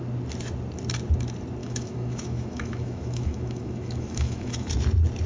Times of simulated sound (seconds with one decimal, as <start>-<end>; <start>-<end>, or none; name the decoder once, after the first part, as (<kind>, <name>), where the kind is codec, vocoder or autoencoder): 1.6-4.7 (autoencoder, DAC-VAE)